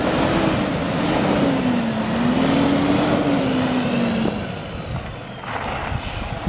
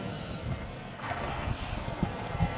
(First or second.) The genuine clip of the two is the first